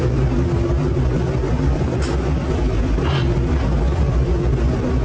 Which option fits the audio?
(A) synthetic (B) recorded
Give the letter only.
B